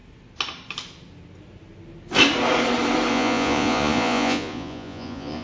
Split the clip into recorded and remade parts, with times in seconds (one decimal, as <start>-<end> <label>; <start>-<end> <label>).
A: 0.0-3.1 recorded; 3.1-5.4 remade